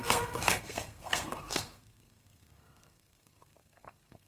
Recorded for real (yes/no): no